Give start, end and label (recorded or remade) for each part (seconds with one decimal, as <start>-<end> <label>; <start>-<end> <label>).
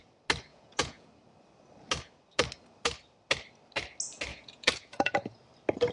0.0-0.5 recorded; 0.5-1.1 remade; 1.1-4.3 recorded; 4.3-5.3 remade; 5.3-5.9 recorded